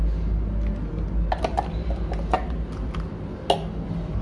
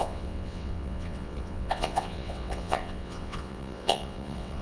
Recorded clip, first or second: first